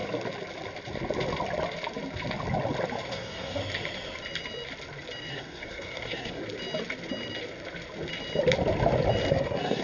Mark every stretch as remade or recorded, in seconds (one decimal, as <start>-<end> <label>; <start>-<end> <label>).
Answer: 0.0-3.1 recorded; 3.1-3.6 remade; 3.6-5.3 recorded; 5.3-6.4 remade; 6.4-9.3 recorded; 9.3-9.8 remade